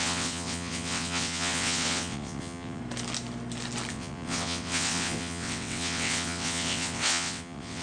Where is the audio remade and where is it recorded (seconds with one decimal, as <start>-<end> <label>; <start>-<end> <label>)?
0.0-2.8 remade; 2.8-3.9 recorded; 3.9-7.8 remade